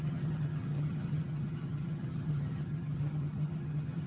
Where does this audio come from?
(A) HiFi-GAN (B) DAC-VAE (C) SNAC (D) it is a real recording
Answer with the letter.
A